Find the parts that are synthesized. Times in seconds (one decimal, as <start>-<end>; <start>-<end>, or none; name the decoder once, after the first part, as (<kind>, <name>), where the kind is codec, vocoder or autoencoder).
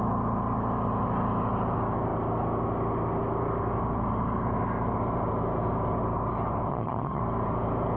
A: 6.7-7.2 (vocoder, HiFi-GAN)